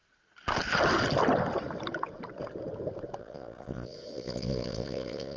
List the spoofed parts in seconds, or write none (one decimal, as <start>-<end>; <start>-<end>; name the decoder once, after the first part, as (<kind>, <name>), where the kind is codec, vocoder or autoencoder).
3.2-5.4 (vocoder, Vocos)